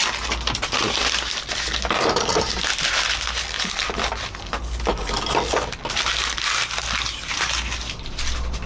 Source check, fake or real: real